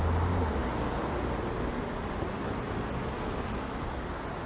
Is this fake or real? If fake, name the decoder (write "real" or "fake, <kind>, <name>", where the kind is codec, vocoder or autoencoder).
real